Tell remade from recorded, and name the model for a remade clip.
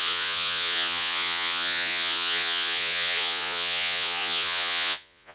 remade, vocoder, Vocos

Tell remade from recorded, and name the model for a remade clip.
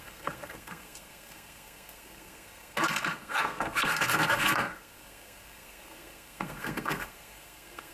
remade, codec, SNAC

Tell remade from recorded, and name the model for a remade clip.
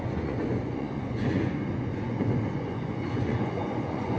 remade, vocoder, Vocos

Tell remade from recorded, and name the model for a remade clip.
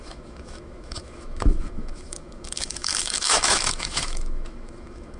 remade, autoencoder, DAC-VAE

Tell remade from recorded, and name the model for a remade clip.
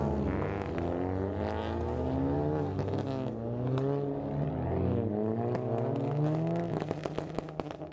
recorded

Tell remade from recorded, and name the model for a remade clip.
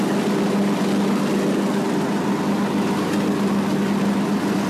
recorded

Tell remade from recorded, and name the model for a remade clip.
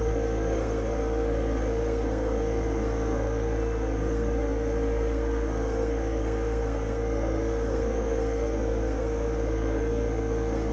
remade, codec, SNAC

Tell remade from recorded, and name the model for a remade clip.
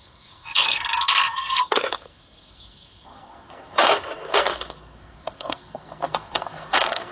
remade, codec, SNAC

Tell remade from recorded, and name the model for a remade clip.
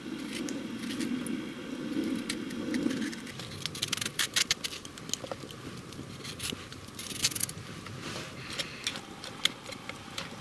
recorded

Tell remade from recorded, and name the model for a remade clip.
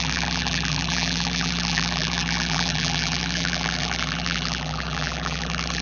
remade, vocoder, BigVGAN v2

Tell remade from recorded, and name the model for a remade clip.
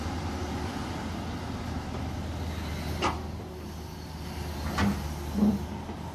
recorded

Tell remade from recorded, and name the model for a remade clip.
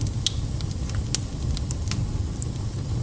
recorded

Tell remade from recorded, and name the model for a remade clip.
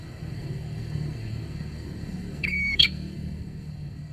remade, codec, SNAC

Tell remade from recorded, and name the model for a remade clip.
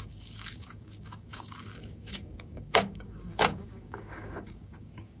remade, codec, DAC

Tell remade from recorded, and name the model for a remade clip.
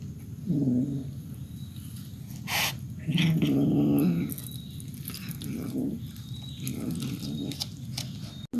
recorded